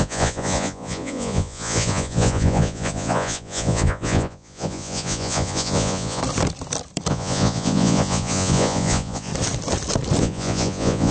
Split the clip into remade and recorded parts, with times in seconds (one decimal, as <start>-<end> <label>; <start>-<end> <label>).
0.0-6.2 remade; 6.2-7.1 recorded; 7.1-9.3 remade; 9.3-10.2 recorded; 10.2-11.1 remade